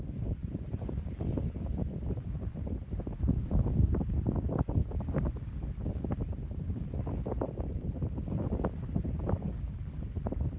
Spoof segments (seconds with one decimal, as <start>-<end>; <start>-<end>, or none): none